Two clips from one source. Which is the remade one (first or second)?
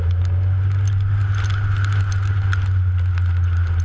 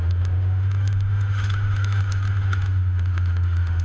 second